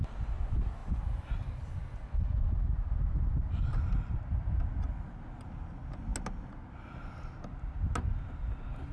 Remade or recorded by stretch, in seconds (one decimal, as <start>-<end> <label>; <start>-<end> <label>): 0.0-8.9 recorded